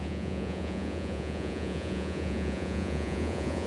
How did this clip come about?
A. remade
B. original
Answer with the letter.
A